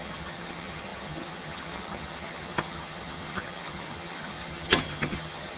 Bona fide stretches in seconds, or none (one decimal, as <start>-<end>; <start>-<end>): none